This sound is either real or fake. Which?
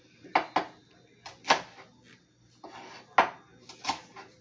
real